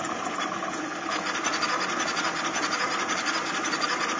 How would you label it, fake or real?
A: real